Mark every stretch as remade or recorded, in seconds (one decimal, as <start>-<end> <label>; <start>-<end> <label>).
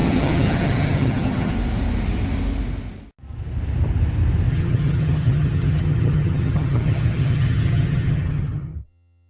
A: 0.0-1.5 remade; 1.5-4.5 recorded; 4.5-9.3 remade